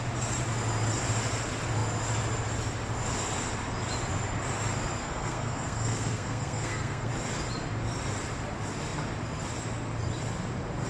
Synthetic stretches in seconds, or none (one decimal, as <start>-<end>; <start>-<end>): 5.0-7.1